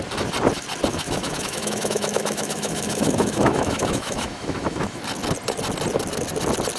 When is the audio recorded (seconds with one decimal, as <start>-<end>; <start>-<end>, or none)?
0.0-0.9; 5.0-6.8